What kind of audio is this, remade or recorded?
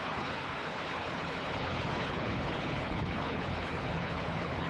remade